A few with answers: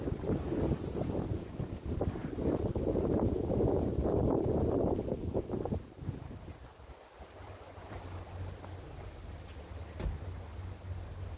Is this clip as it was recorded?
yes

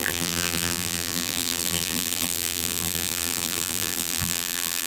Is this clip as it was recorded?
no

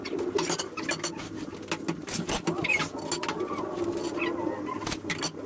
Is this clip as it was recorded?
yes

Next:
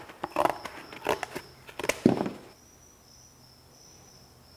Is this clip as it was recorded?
yes